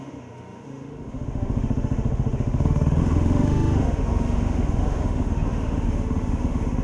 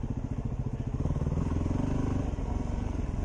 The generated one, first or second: first